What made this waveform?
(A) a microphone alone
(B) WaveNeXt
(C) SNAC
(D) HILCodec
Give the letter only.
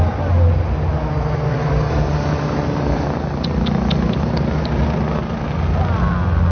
A